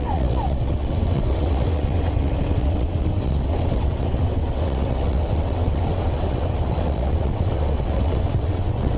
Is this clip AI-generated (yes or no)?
yes